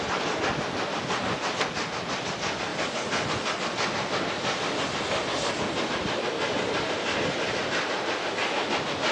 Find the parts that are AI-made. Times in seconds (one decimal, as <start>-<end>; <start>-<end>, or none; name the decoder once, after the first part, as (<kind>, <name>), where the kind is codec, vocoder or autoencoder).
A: none